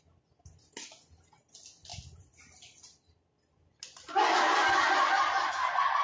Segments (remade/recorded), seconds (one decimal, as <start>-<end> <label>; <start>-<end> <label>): 0.0-6.0 recorded